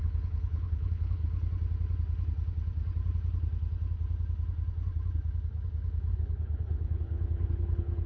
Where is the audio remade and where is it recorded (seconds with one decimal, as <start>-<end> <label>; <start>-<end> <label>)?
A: 0.0-1.2 remade; 1.2-6.1 recorded; 6.1-8.1 remade